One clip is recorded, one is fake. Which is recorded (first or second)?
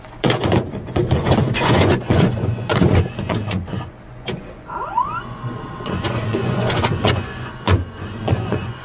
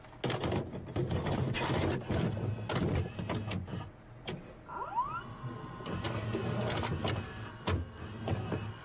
second